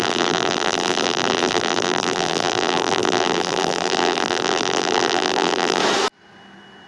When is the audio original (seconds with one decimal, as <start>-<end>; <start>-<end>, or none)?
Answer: 5.8-6.9